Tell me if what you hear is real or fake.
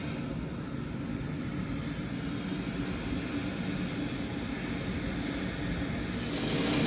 real